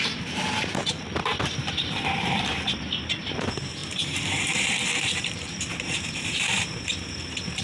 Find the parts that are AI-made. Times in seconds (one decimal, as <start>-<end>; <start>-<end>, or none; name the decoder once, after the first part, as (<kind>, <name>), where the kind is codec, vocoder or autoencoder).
0.0-7.6 (vocoder, BigVGAN v2)